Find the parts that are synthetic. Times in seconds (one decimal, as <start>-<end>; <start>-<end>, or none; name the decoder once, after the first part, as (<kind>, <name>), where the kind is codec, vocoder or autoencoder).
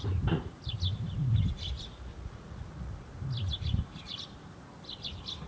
2.1-2.9 (vocoder, Vocos)